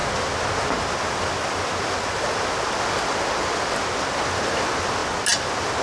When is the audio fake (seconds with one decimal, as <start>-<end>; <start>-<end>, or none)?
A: none